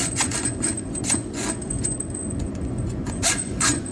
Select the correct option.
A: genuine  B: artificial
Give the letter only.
B